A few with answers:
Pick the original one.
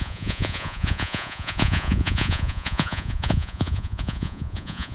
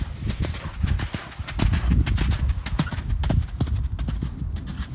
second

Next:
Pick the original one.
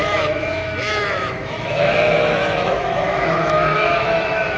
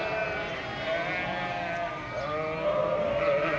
second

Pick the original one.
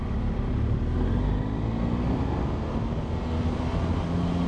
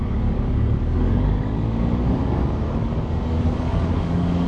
first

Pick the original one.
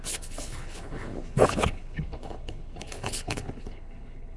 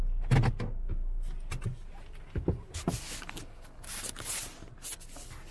second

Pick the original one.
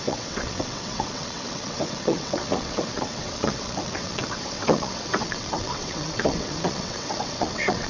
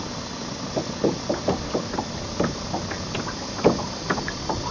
second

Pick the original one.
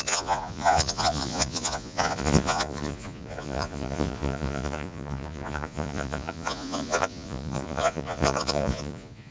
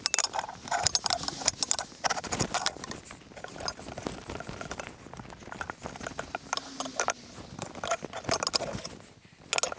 second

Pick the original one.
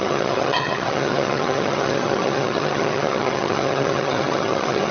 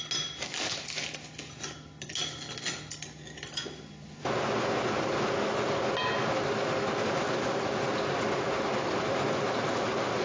second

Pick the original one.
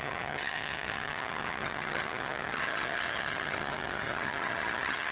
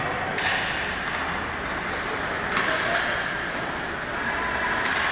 second